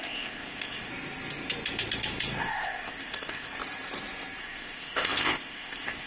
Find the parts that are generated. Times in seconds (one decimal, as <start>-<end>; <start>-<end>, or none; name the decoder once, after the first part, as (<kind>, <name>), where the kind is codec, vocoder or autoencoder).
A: 0.0-0.9 (codec, ZipCodec); 2.4-3.6; 4.4-6.1